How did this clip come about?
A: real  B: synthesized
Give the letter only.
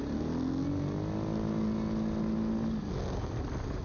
A